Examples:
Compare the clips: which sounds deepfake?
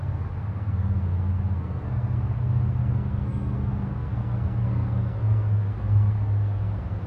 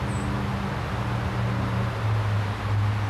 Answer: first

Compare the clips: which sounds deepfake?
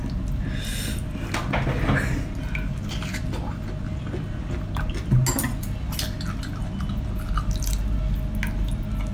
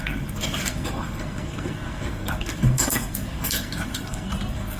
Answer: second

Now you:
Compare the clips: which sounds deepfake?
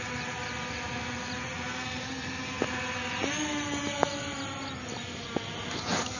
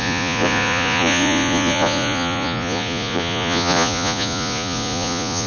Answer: second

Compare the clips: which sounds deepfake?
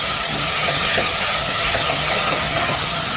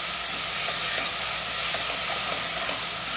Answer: first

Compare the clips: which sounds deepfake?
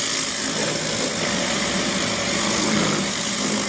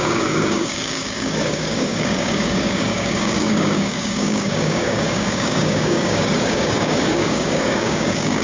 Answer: second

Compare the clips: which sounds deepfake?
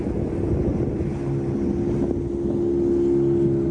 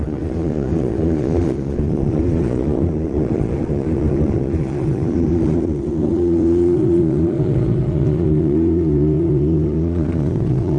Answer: second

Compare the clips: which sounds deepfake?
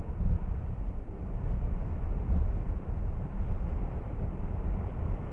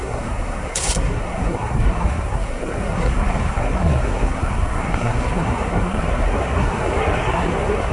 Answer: second